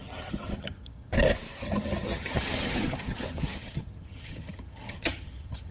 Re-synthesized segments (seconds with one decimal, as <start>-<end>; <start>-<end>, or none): 0.0-1.1; 1.6-5.7